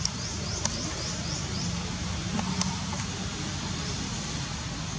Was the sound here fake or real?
real